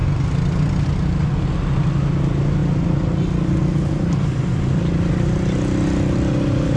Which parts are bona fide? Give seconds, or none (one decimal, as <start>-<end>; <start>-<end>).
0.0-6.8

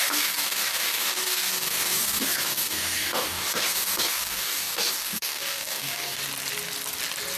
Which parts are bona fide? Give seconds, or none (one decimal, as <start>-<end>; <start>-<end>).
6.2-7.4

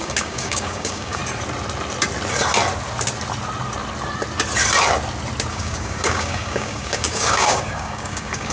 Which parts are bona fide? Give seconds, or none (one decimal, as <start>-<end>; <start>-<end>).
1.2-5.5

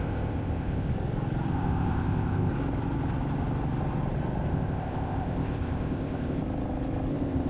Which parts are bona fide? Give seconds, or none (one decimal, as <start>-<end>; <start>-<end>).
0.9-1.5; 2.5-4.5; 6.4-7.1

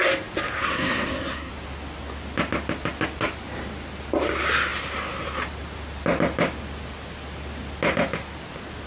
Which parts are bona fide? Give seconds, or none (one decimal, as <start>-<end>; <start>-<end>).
0.0-0.6; 1.5-8.9

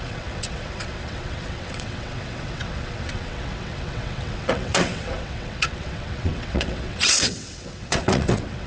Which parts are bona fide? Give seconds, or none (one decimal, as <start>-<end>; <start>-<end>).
none

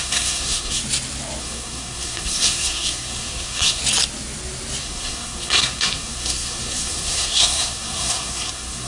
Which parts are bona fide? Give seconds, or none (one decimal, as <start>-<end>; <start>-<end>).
0.8-1.4; 3.8-4.8